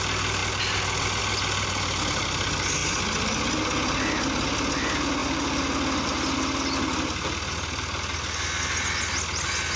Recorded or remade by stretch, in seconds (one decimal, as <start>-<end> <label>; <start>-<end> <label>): 0.0-9.8 recorded